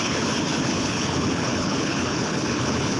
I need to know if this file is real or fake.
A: fake